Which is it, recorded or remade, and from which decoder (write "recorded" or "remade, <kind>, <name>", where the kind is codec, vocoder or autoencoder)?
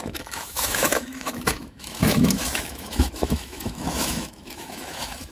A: remade, autoencoder, DAC-VAE